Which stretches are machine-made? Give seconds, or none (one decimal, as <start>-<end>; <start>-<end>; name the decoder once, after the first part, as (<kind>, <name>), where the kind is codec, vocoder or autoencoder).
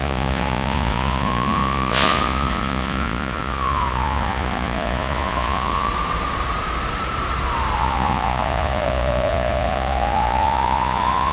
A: 0.0-5.9 (vocoder, Vocos); 7.8-11.3